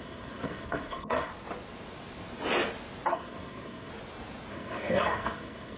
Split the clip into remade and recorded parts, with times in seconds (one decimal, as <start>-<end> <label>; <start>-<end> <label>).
0.0-1.3 remade; 1.3-3.1 recorded; 3.1-3.9 remade; 3.9-4.5 recorded; 4.5-5.8 remade